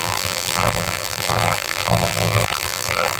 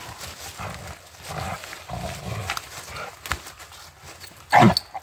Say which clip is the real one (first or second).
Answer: second